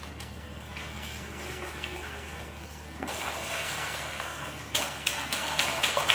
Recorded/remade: remade